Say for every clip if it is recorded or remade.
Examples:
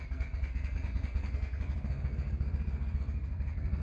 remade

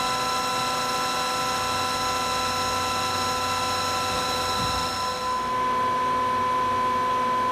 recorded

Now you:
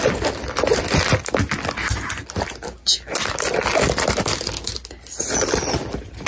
recorded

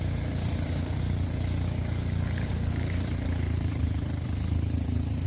remade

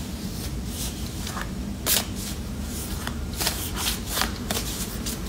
remade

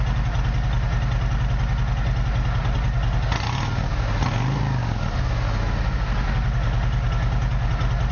recorded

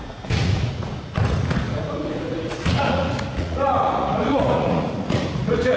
remade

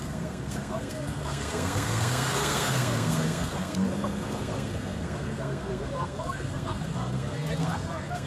remade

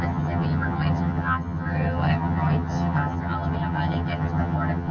remade